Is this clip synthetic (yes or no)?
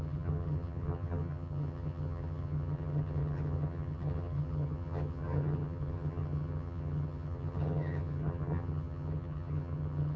yes